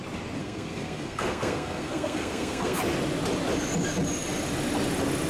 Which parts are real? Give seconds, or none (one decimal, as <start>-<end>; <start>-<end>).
0.0-0.4; 2.8-5.3